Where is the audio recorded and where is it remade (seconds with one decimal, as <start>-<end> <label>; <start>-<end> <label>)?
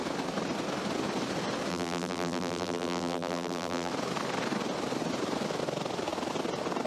0.0-1.7 recorded; 1.7-3.9 remade; 3.9-6.9 recorded